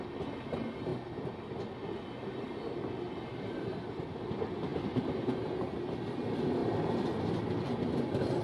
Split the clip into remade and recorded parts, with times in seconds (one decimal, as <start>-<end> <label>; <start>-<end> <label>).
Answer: 0.0-6.6 recorded; 6.6-7.2 remade; 7.2-8.4 recorded